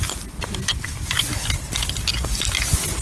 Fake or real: real